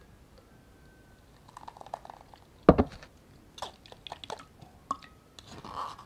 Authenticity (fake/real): real